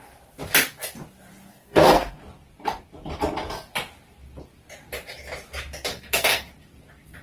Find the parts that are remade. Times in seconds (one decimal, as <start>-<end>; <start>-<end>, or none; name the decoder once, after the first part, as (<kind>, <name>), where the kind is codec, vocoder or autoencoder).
1.5-2.2 (codec, SNAC); 5.9-6.5